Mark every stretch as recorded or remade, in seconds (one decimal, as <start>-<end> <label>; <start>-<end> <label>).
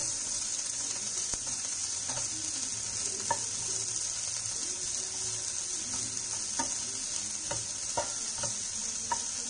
0.0-2.3 remade; 2.3-9.5 recorded